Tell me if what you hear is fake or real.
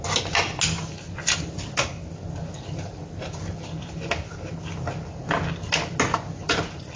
real